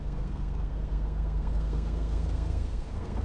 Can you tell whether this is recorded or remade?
remade